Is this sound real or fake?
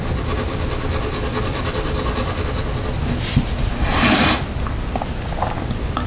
real